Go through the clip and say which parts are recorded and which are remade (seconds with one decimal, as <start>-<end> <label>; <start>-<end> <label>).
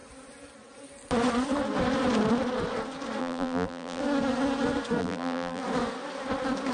0.0-3.2 recorded; 3.2-4.0 remade; 4.0-5.0 recorded; 5.0-5.6 remade; 5.6-6.7 recorded